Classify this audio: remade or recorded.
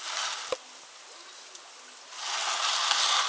recorded